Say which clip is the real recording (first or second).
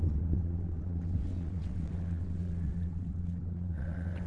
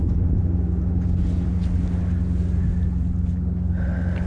second